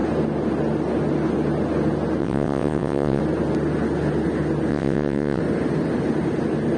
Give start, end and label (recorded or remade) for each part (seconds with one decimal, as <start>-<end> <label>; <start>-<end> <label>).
0.0-2.2 recorded; 2.2-3.2 remade; 3.2-4.7 recorded; 4.7-5.4 remade; 5.4-6.8 recorded